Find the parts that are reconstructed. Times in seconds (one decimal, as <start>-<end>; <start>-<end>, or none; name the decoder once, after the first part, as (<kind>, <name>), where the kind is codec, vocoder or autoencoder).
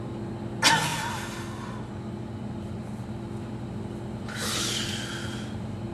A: none